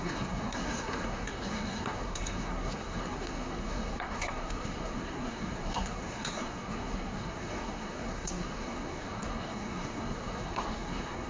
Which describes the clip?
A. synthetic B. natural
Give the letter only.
A